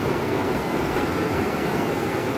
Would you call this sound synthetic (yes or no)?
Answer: yes